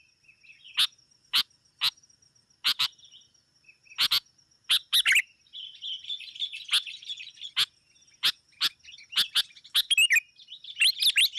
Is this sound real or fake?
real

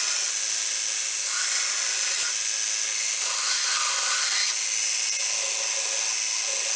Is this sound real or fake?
real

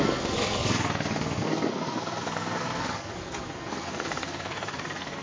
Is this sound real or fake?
fake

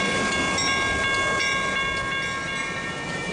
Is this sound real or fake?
real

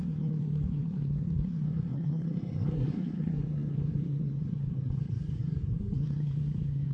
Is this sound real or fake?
fake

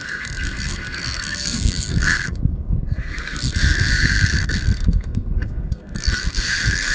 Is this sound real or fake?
fake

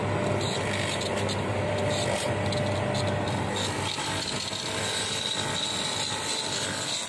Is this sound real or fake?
real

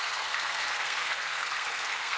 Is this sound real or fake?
fake